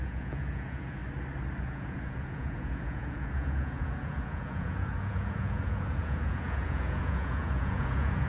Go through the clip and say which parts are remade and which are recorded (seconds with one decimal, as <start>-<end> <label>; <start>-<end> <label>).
0.0-1.0 remade; 1.0-1.6 recorded; 1.6-8.3 remade